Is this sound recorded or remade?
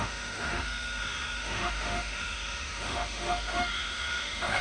remade